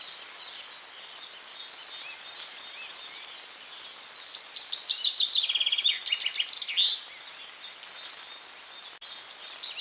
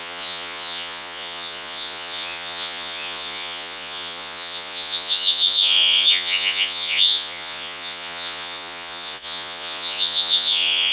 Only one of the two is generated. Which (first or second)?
second